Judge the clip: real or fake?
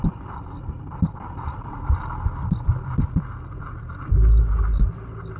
real